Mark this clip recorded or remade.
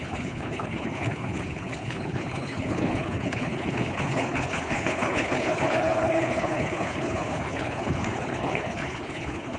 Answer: remade